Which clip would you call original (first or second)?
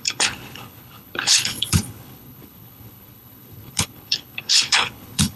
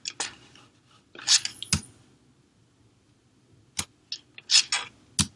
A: second